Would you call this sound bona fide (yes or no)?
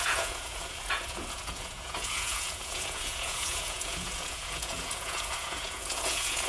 no